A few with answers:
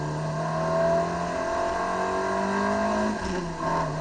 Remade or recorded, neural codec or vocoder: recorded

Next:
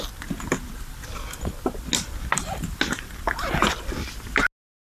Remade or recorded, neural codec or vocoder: recorded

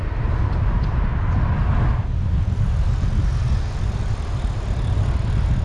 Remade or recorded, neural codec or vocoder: recorded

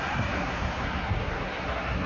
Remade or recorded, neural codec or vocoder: remade, codec, SNAC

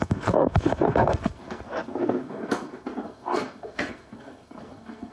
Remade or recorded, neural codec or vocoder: remade, codec, SNAC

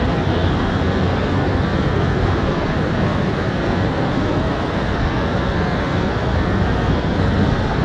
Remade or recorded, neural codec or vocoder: remade, codec, SNAC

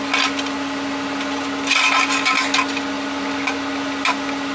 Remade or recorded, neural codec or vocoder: recorded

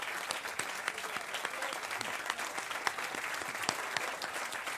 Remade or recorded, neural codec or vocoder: recorded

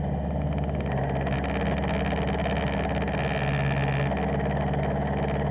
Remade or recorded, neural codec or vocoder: recorded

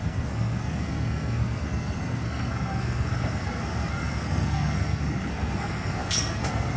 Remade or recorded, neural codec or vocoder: remade, codec, SNAC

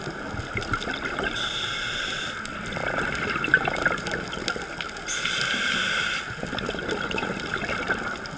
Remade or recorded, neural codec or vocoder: recorded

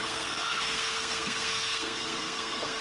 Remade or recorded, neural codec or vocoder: remade, codec, SNAC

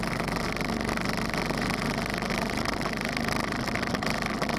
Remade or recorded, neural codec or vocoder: recorded